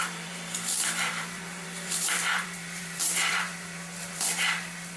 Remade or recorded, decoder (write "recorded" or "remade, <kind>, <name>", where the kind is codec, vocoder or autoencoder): remade, vocoder, BigVGAN v2